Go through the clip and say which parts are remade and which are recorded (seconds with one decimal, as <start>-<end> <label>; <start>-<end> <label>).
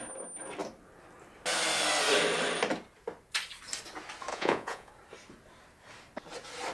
0.0-4.3 recorded; 4.3-4.9 remade; 4.9-6.7 recorded